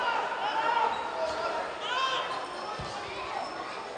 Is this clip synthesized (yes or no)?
no